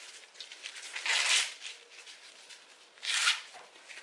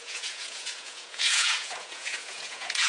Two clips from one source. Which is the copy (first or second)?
second